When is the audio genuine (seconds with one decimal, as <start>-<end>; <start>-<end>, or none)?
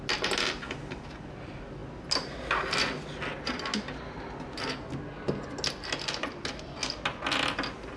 0.0-8.0